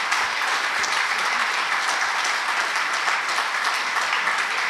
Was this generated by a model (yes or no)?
no